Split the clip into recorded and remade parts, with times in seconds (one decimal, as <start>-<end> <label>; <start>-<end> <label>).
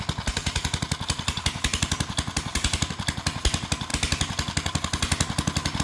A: 0.0-0.4 recorded; 0.4-2.9 remade; 2.9-5.8 recorded